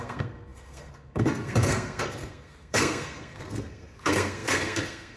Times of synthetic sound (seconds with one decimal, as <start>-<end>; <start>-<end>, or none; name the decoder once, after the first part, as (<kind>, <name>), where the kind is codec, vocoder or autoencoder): 0.0-5.2 (codec, SNAC)